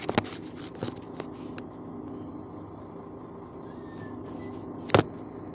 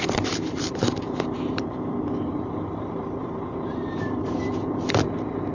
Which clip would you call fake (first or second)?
second